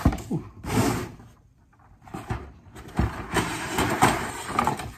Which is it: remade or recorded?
recorded